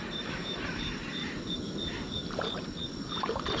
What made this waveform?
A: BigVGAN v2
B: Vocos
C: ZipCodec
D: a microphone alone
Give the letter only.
A